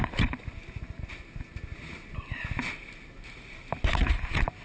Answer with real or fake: real